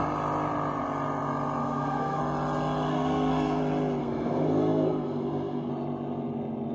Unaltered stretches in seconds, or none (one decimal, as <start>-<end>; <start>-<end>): 0.0-1.6; 2.2-2.9; 3.6-4.0; 5.7-6.7